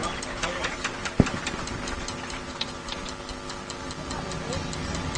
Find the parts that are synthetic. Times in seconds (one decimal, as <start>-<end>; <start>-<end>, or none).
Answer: 0.0-3.1